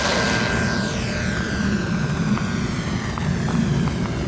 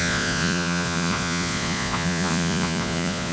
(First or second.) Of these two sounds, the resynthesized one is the second